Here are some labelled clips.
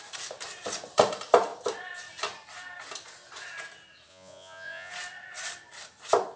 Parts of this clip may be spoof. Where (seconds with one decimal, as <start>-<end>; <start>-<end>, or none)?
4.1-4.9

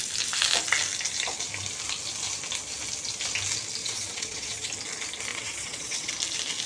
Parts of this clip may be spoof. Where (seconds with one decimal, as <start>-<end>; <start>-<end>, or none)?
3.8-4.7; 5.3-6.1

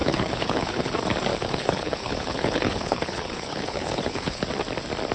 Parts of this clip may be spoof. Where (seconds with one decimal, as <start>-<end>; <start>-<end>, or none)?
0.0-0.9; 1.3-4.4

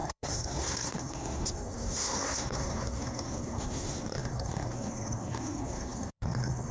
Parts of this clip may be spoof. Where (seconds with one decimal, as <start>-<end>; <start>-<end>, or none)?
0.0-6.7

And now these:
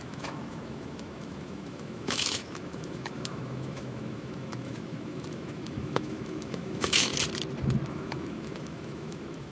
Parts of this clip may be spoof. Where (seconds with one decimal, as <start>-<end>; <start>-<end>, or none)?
0.0-7.1; 7.9-9.5